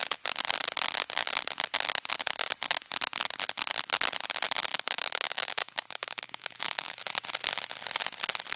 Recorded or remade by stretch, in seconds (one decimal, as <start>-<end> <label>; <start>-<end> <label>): 0.0-4.7 recorded; 4.7-7.1 remade; 7.1-8.6 recorded